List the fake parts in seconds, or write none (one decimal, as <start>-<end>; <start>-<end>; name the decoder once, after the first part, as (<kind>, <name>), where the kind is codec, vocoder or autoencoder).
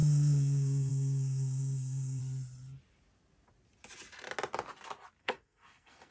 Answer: 0.0-2.2 (codec, SNAC); 5.2-6.1